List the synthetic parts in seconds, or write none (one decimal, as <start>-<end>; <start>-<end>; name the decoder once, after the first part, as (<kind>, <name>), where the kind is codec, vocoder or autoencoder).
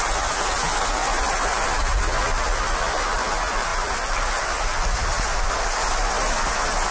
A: 0.0-6.9 (vocoder, BigVGAN v2)